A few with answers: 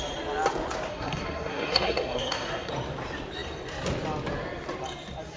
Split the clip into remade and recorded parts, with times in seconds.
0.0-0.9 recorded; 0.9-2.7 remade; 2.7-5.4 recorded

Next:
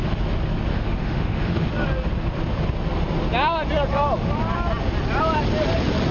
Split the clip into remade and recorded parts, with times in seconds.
0.0-0.7 recorded; 0.7-1.7 remade; 1.7-6.1 recorded

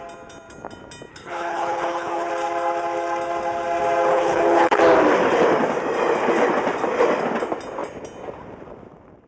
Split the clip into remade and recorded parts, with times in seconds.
0.0-1.1 recorded; 1.1-2.3 remade; 2.3-4.1 recorded; 4.1-4.8 remade; 4.8-9.3 recorded

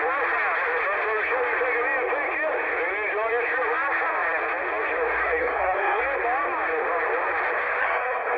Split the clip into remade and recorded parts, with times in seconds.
0.0-5.4 recorded; 5.4-6.0 remade; 6.0-7.8 recorded; 7.8-8.4 remade